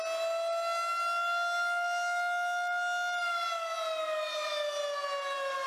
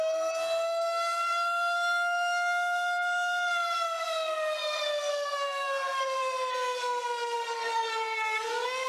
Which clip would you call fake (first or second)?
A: second